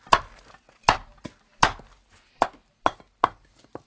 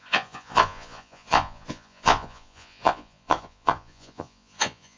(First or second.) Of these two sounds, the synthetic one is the second